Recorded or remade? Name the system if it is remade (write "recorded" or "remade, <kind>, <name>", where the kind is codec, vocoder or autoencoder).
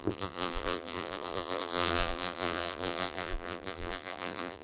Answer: remade, vocoder, BigVGAN v2